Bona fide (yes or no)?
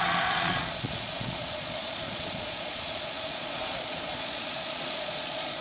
no